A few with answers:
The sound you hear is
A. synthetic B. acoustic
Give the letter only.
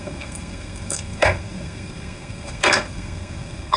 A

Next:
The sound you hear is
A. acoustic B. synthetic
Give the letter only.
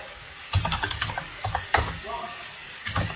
B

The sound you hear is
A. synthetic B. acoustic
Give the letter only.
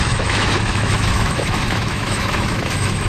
A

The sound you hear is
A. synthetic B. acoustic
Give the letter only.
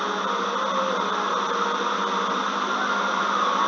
B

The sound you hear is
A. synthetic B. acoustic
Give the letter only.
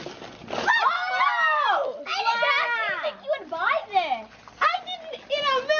B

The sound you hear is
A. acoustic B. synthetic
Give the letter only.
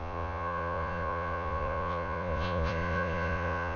B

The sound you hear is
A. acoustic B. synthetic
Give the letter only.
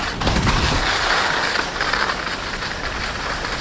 A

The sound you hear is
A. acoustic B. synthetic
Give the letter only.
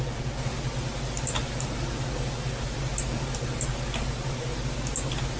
A